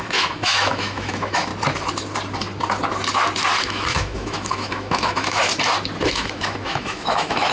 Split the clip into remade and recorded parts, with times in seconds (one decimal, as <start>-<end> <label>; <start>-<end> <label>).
0.0-1.5 remade; 1.5-3.6 recorded; 3.6-5.5 remade; 5.5-6.0 recorded; 6.0-7.5 remade